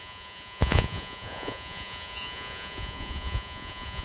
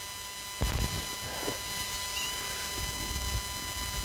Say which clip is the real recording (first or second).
second